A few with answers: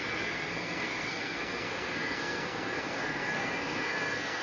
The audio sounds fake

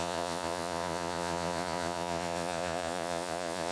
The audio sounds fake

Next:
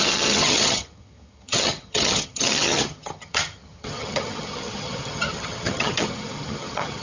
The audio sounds fake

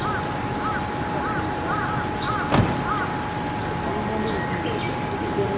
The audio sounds real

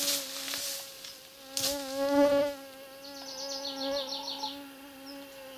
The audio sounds real